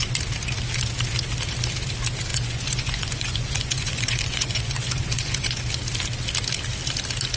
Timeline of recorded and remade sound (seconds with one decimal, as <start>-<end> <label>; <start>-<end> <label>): 0.0-2.3 recorded; 2.3-5.6 remade; 5.6-7.4 recorded